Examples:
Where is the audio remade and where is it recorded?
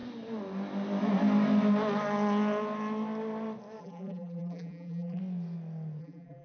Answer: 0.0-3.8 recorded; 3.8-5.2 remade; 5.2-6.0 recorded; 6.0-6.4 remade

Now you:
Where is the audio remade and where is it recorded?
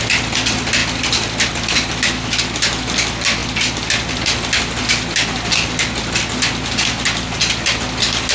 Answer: 0.0-8.3 recorded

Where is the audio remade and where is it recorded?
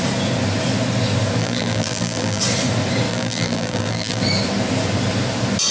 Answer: 0.0-1.4 recorded; 1.4-2.4 remade; 2.4-3.1 recorded; 3.1-4.2 remade; 4.2-5.7 recorded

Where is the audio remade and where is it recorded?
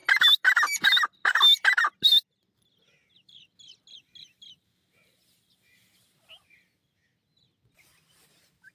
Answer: 0.0-1.3 remade; 1.3-8.7 recorded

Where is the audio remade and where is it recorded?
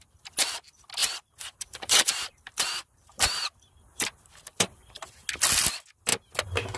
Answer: 0.0-1.0 recorded; 1.0-5.1 remade; 5.1-6.8 recorded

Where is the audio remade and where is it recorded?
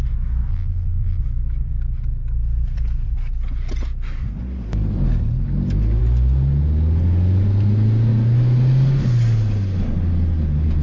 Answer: 0.0-0.5 recorded; 0.5-1.2 remade; 1.2-10.8 recorded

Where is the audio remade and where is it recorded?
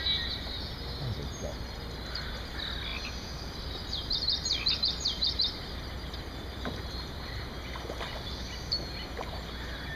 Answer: 0.0-2.9 recorded; 2.9-7.8 remade; 7.8-10.0 recorded